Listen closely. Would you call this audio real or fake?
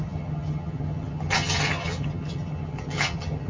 fake